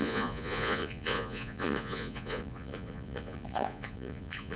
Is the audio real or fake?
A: fake